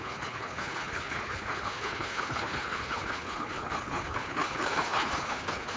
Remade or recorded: remade